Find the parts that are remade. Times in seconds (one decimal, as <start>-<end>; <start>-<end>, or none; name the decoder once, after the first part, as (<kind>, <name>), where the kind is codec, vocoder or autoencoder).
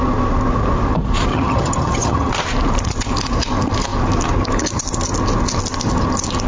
1.3-2.3 (vocoder, HiFi-GAN)